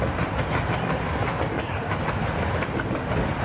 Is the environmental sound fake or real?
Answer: real